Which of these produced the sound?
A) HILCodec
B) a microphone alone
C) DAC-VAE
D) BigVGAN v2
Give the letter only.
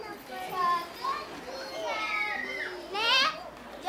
B